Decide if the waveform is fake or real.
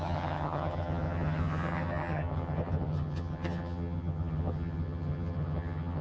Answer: fake